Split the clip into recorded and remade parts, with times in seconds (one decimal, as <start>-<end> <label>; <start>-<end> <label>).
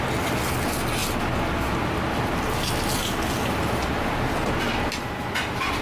0.0-5.8 recorded